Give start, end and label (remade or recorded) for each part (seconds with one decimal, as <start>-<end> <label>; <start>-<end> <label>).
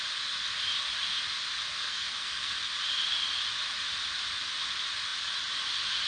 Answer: 0.0-1.7 recorded; 1.7-2.6 remade; 2.6-6.1 recorded